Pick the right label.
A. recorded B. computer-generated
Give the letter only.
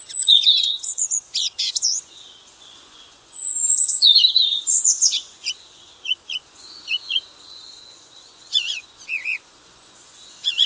B